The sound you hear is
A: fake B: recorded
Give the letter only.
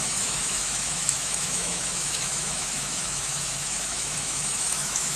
A